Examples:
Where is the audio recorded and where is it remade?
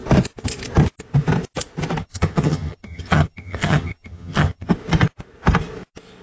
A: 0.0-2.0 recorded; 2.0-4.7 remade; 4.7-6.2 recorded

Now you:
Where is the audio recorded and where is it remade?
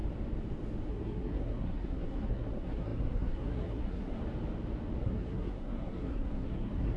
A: 0.0-0.9 recorded; 0.9-4.2 remade; 4.2-5.0 recorded; 5.0-7.0 remade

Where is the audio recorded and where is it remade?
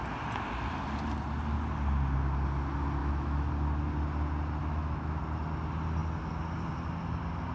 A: 0.0-3.0 recorded; 3.0-3.5 remade; 3.5-4.6 recorded; 4.6-5.2 remade; 5.2-7.5 recorded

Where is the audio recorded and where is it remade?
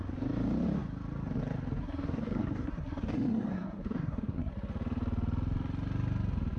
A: 0.0-1.8 recorded; 1.8-4.5 remade; 4.5-6.6 recorded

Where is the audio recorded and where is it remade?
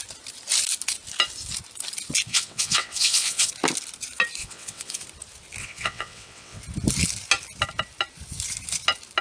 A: 0.0-2.3 recorded; 2.3-3.5 remade; 3.5-4.4 recorded; 4.4-5.0 remade; 5.0-5.6 recorded; 5.6-6.6 remade; 6.6-9.2 recorded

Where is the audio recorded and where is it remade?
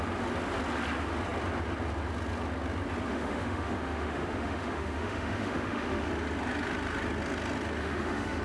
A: 0.0-3.1 recorded; 3.1-6.1 remade; 6.1-7.8 recorded; 7.8-8.4 remade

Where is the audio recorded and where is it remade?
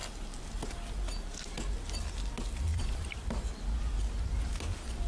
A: 0.0-2.7 recorded; 2.7-3.3 remade; 3.3-5.1 recorded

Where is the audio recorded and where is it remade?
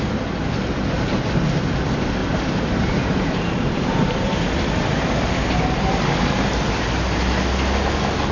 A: 0.0-2.2 recorded; 2.2-6.0 remade; 6.0-8.3 recorded